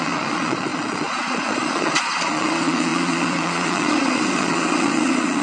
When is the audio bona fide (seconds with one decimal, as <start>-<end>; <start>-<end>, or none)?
none